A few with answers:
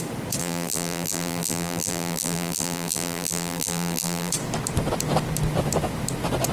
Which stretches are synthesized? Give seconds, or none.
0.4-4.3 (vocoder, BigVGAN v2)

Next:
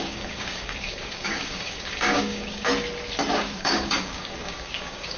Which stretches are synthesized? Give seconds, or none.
0.0-2.7 (codec, DAC); 3.6-5.2

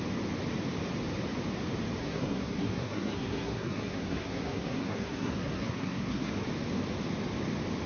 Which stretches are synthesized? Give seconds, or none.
2.0-6.3 (codec, SNAC)

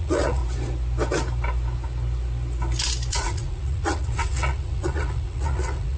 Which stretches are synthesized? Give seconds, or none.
0.0-0.4 (vocoder, Vocos); 3.1-6.0